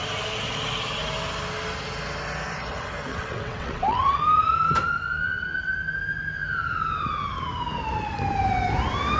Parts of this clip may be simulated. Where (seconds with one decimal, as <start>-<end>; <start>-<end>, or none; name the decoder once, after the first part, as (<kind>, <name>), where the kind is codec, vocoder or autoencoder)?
3.1-4.2 (vocoder, WaveNeXt)